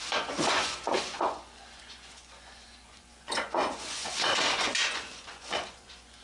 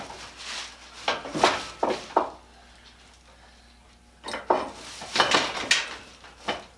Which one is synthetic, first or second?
first